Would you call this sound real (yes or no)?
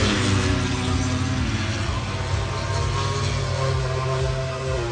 yes